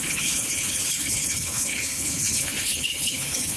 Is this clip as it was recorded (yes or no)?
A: no